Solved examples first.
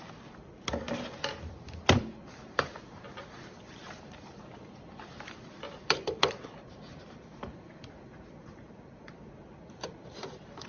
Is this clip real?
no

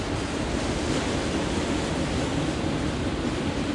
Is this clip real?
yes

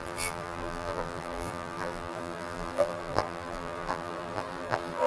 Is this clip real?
no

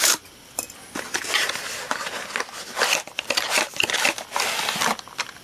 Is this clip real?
yes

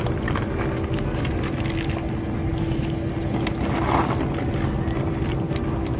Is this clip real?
yes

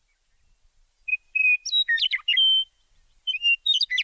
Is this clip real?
yes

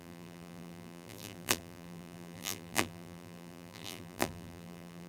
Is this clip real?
no